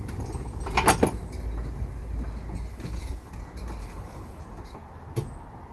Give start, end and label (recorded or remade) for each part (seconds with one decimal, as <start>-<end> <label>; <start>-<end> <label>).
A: 0.0-2.7 recorded; 2.7-3.3 remade; 3.3-3.8 recorded; 3.8-4.4 remade; 4.4-5.7 recorded